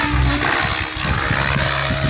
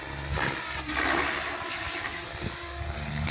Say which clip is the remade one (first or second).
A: second